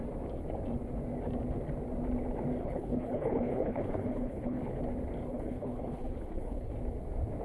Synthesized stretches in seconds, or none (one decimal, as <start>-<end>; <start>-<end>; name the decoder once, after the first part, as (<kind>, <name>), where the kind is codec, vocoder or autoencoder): 2.6-4.6 (codec, HILCodec); 5.3-6.7